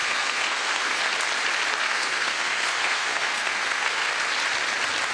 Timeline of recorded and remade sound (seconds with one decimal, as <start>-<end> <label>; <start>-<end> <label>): 0.0-1.0 remade; 1.0-1.8 recorded; 1.8-4.1 remade; 4.1-5.1 recorded